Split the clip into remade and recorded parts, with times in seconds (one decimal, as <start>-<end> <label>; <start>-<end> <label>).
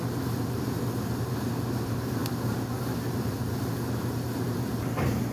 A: 0.0-5.3 recorded